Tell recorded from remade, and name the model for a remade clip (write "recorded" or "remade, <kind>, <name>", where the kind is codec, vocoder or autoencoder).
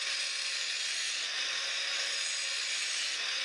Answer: recorded